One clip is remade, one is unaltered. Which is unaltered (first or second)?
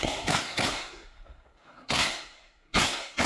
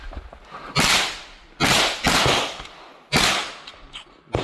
second